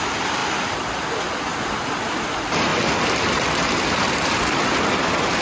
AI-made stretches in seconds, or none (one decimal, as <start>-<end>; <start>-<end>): 0.0-1.5; 2.1-2.7; 4.1-5.4